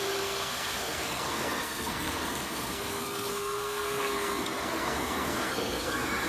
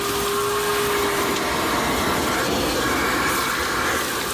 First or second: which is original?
second